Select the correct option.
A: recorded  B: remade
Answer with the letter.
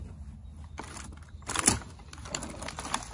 A